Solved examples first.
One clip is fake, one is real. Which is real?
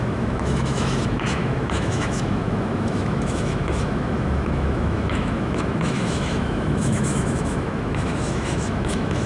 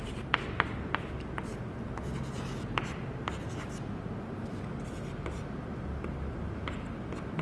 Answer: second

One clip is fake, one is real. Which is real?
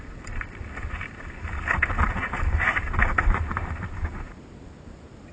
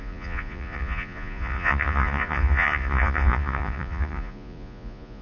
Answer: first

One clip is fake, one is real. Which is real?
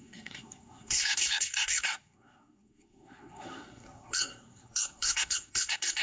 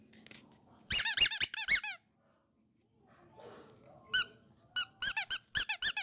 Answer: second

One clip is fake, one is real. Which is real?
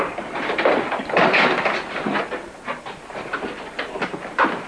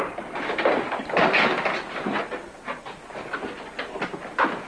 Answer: second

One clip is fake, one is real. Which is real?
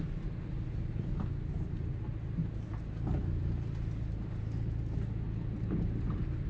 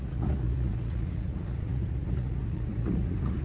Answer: first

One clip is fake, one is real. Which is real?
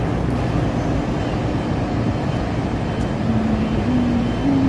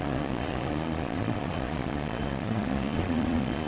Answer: first